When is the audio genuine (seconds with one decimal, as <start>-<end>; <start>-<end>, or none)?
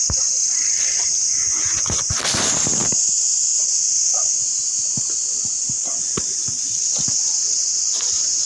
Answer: 0.0-1.2; 2.1-8.5